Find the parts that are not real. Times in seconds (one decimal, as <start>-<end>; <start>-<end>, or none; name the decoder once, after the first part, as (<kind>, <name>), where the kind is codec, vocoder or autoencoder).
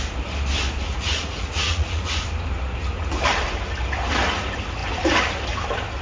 0.9-2.1 (vocoder, Vocos)